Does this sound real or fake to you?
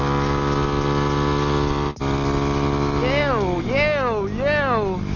real